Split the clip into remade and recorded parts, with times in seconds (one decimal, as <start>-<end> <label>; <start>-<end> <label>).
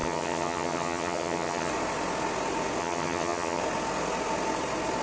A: 0.0-1.7 remade; 1.7-2.8 recorded; 2.8-3.6 remade; 3.6-5.0 recorded